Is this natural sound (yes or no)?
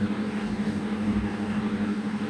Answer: no